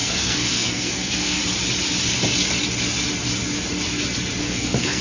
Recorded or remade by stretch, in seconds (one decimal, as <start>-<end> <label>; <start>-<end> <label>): 0.0-1.4 remade; 1.4-4.4 recorded; 4.4-5.0 remade